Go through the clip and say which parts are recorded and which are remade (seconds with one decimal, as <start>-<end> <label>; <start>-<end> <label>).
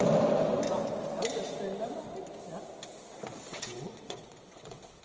0.0-3.5 recorded; 3.5-5.0 remade